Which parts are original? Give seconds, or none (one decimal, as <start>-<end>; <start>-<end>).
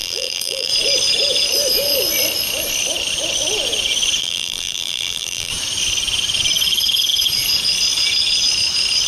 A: 0.7-4.2; 5.5-9.1